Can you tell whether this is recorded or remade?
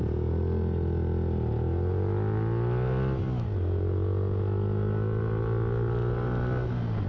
recorded